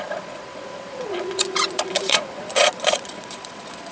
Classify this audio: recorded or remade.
remade